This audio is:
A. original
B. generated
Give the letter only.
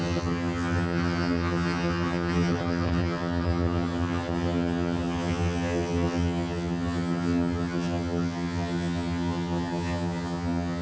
B